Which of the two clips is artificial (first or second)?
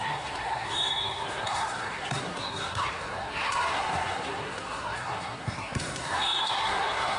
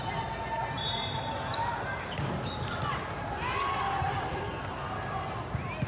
first